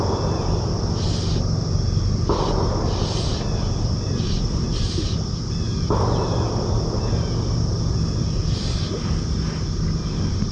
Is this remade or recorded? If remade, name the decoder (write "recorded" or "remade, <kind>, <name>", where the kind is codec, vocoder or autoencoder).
recorded